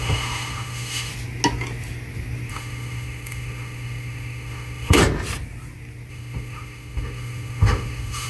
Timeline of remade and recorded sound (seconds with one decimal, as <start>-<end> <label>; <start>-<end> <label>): 0.0-1.1 remade; 1.1-2.5 recorded; 2.5-5.0 remade; 5.0-6.1 recorded; 6.1-8.3 remade